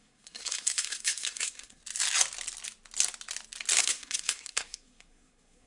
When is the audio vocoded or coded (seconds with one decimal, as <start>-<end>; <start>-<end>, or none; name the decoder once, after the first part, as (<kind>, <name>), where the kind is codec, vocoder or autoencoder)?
0.0-1.8 (codec, SNAC); 3.8-5.7